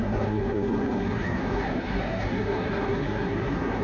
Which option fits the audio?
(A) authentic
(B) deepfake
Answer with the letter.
B